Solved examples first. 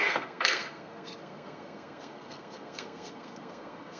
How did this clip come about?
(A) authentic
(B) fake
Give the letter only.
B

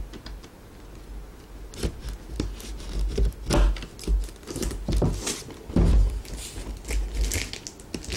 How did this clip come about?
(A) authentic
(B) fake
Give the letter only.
A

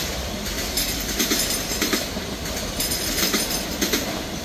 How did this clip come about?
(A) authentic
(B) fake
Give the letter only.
A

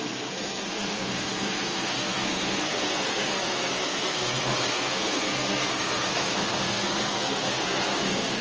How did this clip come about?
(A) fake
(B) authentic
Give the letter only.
A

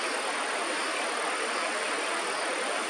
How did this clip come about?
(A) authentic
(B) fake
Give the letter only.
A